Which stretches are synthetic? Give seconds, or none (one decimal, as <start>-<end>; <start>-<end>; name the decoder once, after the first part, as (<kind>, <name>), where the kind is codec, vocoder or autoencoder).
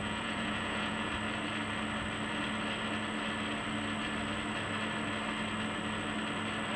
0.0-1.1 (vocoder, Vocos)